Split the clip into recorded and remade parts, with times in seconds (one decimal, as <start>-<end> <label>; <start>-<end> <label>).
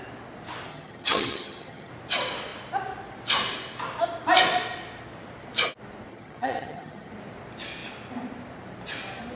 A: 0.0-0.7 recorded; 0.7-1.9 remade; 1.9-6.1 recorded; 6.1-7.1 remade; 7.1-9.4 recorded